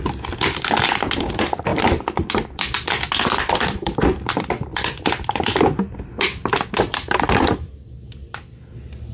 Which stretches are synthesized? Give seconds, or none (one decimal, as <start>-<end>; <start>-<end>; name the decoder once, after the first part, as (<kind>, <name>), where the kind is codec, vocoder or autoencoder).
1.7-6.2 (vocoder, BigVGAN v2)